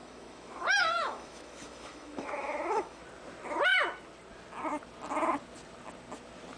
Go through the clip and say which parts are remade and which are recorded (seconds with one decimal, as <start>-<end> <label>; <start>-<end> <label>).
0.0-3.0 remade; 3.0-6.6 recorded